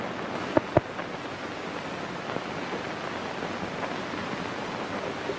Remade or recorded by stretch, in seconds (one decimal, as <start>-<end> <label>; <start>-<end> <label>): 0.0-5.4 recorded